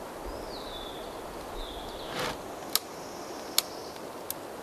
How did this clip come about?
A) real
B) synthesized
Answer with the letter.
A